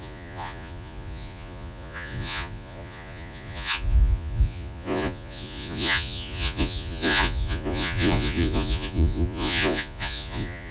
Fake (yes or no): yes